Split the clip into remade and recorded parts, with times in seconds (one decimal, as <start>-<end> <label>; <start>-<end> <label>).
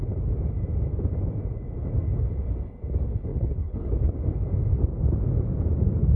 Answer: 0.0-3.3 recorded; 3.3-4.1 remade; 4.1-6.2 recorded